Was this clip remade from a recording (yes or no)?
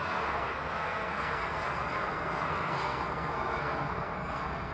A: yes